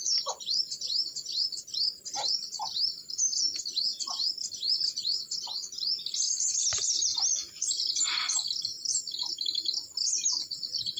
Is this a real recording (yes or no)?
yes